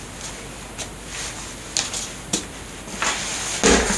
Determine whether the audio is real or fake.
real